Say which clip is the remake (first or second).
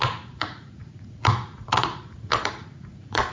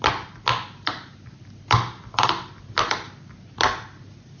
first